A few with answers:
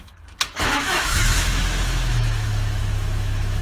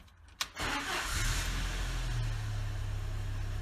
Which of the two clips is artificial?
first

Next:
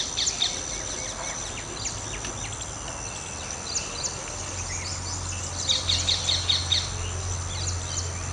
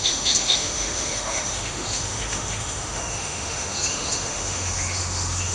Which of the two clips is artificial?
second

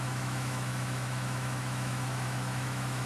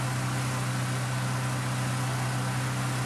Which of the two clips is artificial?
first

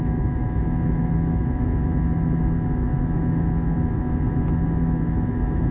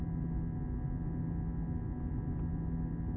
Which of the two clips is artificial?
first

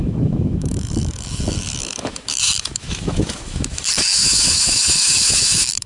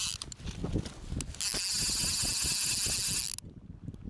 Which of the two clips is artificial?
first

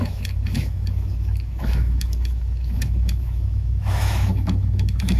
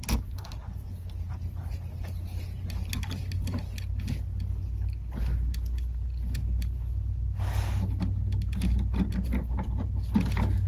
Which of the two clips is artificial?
first